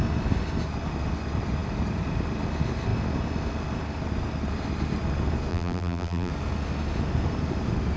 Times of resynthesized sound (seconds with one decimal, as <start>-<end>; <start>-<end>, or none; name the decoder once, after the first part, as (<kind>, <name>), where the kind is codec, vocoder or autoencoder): 5.5-6.3 (vocoder, BigVGAN v2)